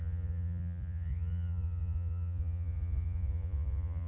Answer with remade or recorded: remade